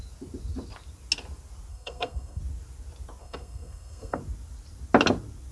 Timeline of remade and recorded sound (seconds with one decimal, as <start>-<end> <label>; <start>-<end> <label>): 0.0-1.7 recorded; 1.7-2.4 remade; 2.4-3.2 recorded; 3.2-4.2 remade; 4.2-5.5 recorded